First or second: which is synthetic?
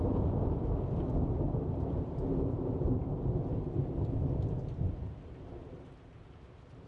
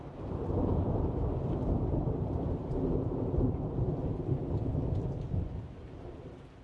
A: second